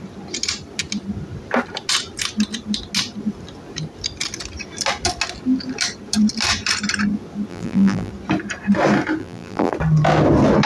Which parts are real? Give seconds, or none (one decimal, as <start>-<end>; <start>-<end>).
0.0-7.5; 8.1-9.2; 9.7-10.7